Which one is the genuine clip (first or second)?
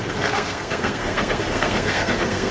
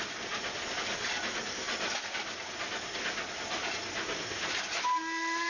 second